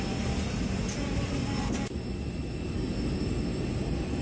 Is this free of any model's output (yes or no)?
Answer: yes